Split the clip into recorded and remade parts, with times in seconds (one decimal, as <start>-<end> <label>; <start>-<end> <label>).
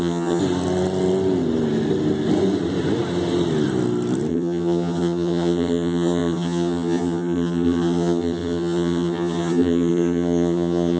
0.0-0.4 remade; 0.4-4.3 recorded; 4.3-11.0 remade